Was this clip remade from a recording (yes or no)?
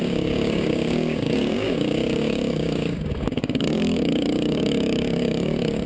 yes